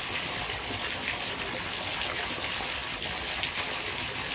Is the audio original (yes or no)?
yes